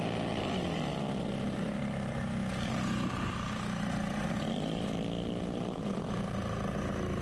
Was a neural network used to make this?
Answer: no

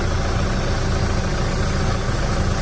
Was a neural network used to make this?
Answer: no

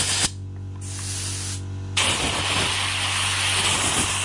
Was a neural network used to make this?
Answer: no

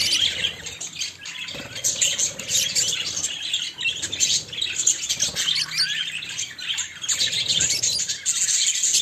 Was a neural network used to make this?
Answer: no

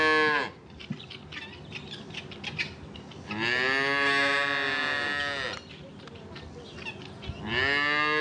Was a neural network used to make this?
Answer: no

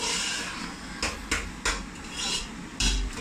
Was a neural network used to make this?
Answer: no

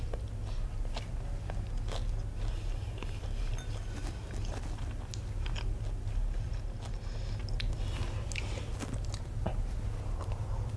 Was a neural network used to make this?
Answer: no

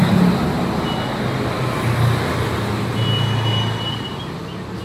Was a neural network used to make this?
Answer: no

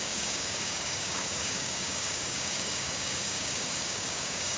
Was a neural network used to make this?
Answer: yes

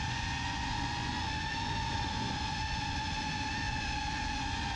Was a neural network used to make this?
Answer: yes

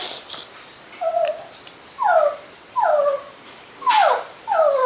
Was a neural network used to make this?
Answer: no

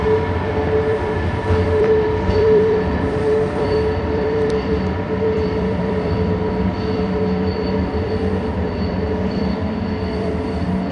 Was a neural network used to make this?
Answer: yes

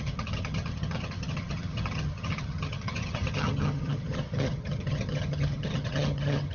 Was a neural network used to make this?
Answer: yes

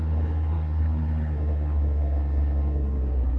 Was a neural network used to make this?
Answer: yes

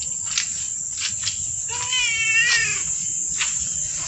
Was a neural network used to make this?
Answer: no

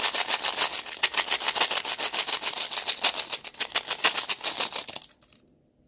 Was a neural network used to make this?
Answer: no